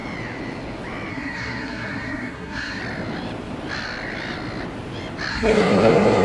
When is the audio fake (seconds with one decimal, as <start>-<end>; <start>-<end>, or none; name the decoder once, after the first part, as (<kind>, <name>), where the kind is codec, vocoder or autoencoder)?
1.1-2.8 (codec, SNAC); 5.3-6.2